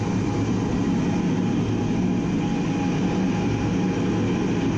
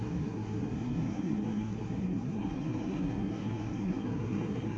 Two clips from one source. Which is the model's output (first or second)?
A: second